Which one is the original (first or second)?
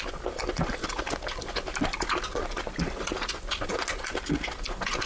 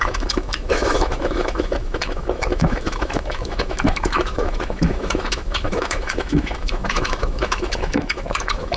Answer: first